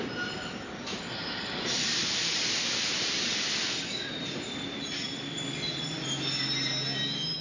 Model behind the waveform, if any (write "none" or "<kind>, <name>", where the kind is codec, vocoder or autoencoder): none